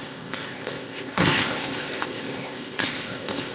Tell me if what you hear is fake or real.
fake